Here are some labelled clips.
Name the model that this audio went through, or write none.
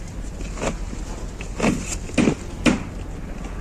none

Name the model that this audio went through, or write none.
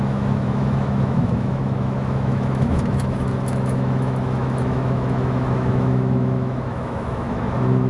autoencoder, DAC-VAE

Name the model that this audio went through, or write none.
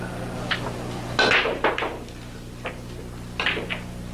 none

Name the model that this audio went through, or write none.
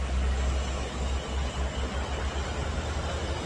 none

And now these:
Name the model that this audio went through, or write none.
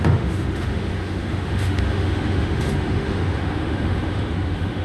autoencoder, DAC-VAE